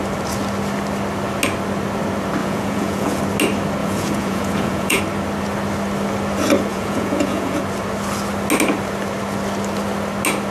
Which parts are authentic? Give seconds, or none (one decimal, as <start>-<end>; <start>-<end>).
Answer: 0.0-2.4; 3.2-3.8; 5.0-6.7; 7.6-10.5